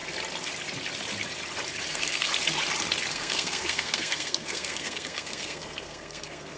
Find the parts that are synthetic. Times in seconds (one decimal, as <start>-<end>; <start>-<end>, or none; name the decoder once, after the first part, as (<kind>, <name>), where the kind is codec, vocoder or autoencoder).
1.9-2.3 (codec, SNAC); 3.1-6.6

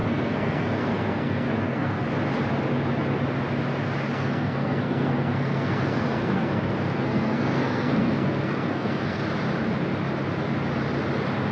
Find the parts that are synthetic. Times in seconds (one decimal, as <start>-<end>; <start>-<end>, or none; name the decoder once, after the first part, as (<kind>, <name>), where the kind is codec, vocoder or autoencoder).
0.0-2.0 (codec, SNAC); 4.1-9.2

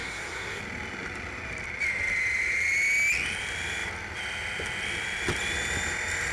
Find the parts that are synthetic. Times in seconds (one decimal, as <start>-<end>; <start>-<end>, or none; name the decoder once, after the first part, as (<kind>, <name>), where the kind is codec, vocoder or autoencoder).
0.0-0.6 (codec, SNAC)

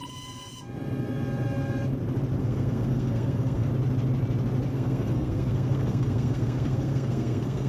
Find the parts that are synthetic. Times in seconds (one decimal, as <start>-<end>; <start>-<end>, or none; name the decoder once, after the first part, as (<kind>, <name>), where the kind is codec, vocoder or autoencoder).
2.4-3.7 (codec, SNAC); 4.7-7.7